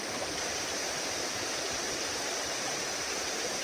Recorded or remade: remade